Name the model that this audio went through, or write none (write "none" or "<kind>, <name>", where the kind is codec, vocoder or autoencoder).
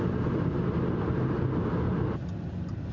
none